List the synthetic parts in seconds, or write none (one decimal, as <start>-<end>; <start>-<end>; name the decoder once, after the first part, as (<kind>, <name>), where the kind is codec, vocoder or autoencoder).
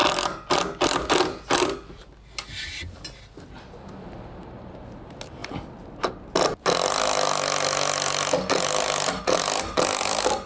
none